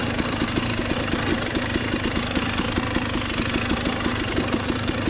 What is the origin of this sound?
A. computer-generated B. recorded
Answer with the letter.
B